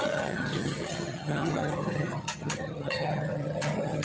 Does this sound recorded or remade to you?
remade